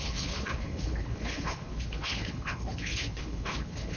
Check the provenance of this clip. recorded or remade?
remade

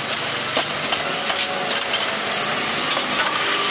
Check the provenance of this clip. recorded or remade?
recorded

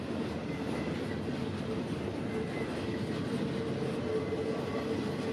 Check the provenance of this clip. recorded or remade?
recorded